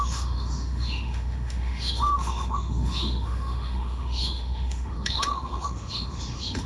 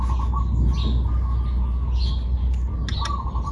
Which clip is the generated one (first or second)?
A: first